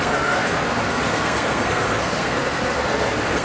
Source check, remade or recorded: remade